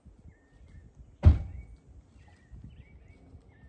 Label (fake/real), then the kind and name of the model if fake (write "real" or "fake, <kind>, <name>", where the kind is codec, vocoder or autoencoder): real